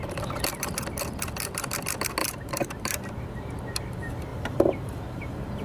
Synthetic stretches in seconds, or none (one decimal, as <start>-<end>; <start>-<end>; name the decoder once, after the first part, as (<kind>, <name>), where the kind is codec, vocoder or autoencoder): 2.2-3.5 (vocoder, BigVGAN v2); 4.3-5.6